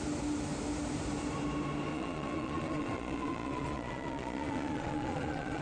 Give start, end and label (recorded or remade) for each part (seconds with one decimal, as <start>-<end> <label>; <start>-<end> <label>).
0.0-1.9 recorded; 1.9-5.6 remade